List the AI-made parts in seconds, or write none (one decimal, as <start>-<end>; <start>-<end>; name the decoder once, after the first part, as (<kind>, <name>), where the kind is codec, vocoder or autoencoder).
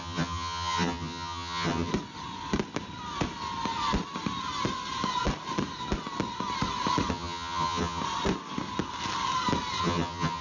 0.0-1.9 (vocoder, HiFi-GAN); 7.1-8.0; 9.8-10.4